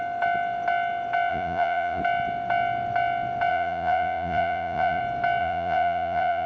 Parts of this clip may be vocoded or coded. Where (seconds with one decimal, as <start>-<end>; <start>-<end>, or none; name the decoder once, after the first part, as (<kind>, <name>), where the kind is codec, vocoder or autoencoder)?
1.3-2.0 (vocoder, Vocos); 3.5-5.0; 5.4-6.5